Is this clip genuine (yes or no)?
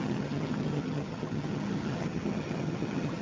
no